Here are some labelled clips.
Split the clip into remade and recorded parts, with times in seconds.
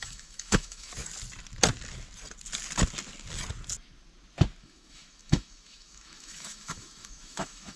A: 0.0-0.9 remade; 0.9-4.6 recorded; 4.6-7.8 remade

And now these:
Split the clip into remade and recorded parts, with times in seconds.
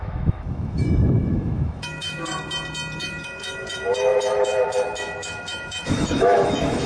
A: 0.0-2.3 remade; 2.3-3.0 recorded; 3.0-6.9 remade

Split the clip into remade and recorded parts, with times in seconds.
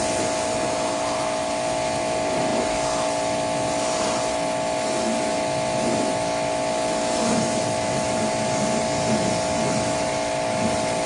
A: 0.0-11.1 recorded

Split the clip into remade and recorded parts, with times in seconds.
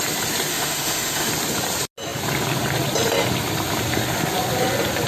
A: 0.0-0.5 recorded; 0.5-1.3 remade; 1.3-5.1 recorded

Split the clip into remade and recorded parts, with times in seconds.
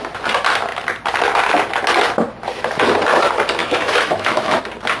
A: 0.0-3.6 recorded; 3.6-4.6 remade; 4.6-5.0 recorded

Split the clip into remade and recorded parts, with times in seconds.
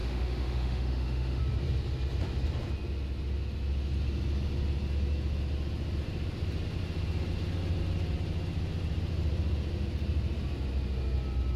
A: 0.0-1.4 remade; 1.4-11.6 recorded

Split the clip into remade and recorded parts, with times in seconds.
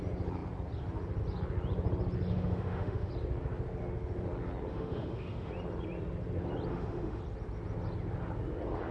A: 0.0-2.3 recorded; 2.3-3.1 remade; 3.1-4.7 recorded; 4.7-5.5 remade; 5.5-6.7 recorded; 6.7-7.2 remade; 7.2-8.9 recorded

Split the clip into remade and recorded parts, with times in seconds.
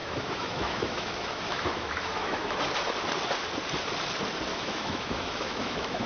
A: 0.0-2.6 remade; 2.6-4.5 recorded; 4.5-6.1 remade